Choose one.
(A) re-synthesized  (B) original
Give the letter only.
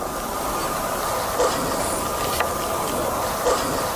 B